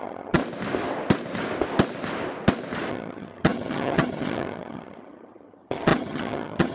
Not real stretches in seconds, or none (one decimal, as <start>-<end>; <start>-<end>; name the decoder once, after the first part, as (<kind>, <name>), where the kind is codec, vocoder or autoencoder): 0.0-0.4 (vocoder, HiFi-GAN); 2.9-6.7